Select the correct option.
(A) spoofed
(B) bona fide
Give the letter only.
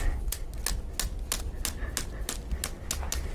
B